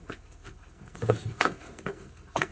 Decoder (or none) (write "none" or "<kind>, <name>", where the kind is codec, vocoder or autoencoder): codec, SNAC